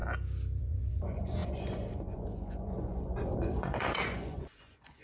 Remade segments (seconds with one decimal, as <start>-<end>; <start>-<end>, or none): 0.6-5.0